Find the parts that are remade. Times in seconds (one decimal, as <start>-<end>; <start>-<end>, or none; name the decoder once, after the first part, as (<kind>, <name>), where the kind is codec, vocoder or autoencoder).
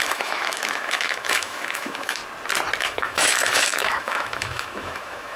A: 0.0-2.2 (autoencoder, DAC-VAE); 2.8-5.4